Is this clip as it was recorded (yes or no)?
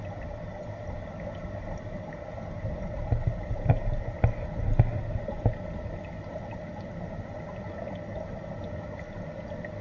yes